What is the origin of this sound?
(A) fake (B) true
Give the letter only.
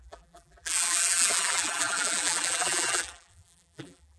A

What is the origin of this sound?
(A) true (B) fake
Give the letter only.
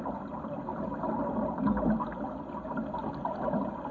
A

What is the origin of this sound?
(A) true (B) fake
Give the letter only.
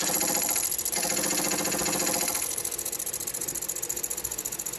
A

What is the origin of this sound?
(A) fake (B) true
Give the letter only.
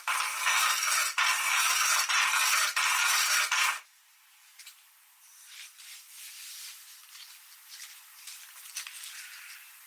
A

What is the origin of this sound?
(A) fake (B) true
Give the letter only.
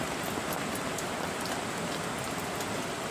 B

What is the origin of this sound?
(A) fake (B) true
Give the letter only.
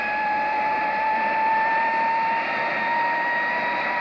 A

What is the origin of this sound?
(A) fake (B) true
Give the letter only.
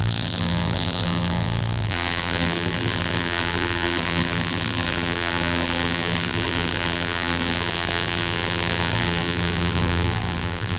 A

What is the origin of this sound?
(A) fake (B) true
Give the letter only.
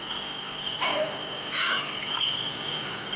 B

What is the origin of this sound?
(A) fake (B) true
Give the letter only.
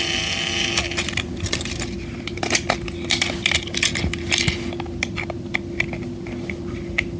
B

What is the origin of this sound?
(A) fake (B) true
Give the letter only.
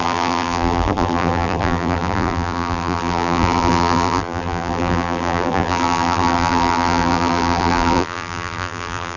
A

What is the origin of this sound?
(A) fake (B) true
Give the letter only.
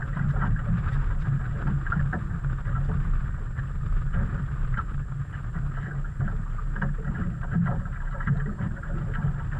A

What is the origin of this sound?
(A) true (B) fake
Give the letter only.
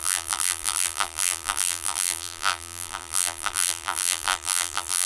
B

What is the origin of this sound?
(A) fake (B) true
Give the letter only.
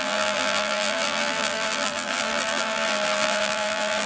A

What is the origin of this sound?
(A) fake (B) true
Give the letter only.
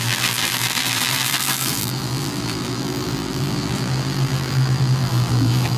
A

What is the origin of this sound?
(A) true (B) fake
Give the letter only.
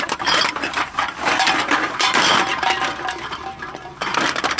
B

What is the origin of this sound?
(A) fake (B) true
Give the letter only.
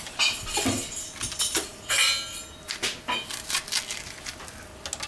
B